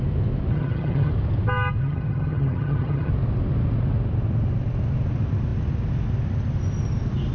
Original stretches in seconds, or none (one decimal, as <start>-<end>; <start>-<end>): 0.0-0.5; 1.1-1.8; 3.1-7.3